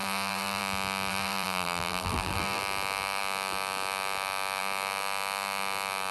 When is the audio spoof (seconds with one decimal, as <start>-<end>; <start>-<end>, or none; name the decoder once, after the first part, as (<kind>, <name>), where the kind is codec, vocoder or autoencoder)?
0.0-0.6 (vocoder, BigVGAN v2); 1.1-2.6